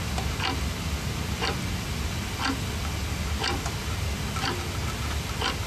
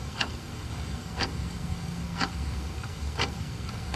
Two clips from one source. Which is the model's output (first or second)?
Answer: second